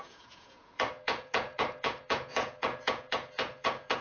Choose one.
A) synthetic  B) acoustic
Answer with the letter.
A